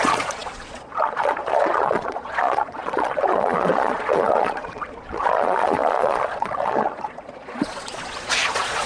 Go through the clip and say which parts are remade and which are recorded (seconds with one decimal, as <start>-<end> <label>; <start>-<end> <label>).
0.0-8.9 remade